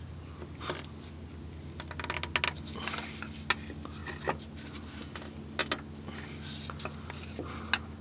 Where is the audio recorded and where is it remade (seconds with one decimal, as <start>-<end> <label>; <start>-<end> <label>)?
0.0-8.0 recorded